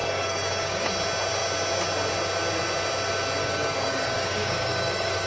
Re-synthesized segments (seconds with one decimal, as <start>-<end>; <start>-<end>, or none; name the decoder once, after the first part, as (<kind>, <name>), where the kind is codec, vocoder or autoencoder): 0.0-0.9 (codec, DAC); 3.4-5.3